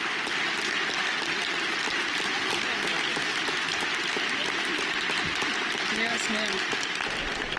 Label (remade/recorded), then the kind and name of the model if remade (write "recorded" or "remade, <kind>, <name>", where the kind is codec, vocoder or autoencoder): recorded